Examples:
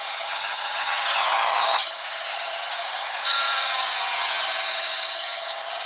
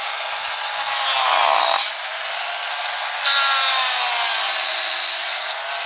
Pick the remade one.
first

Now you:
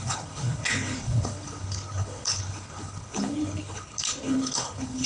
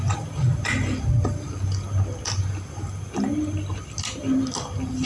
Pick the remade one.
first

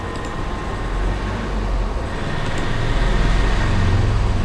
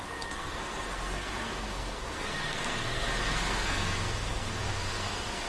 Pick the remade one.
second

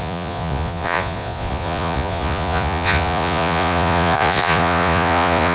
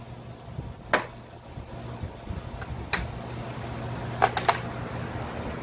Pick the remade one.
first